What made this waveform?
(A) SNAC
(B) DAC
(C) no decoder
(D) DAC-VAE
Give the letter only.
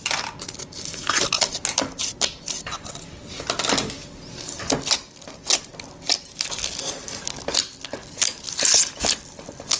C